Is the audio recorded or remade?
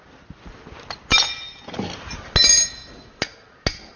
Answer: recorded